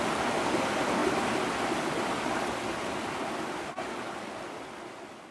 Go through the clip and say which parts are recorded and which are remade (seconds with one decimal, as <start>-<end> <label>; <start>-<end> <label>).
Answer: 0.0-5.3 recorded